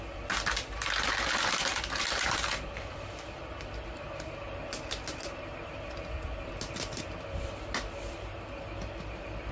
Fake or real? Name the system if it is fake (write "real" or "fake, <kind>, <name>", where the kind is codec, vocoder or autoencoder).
real